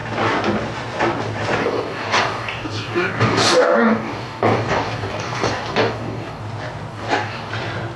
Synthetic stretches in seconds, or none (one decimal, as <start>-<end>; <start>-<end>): 1.6-6.4; 6.9-7.5